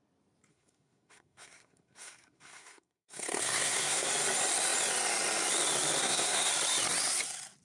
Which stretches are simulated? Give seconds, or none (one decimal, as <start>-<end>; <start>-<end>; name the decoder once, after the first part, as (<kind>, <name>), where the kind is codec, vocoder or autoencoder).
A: 0.5-4.1 (codec, SNAC); 6.0-6.5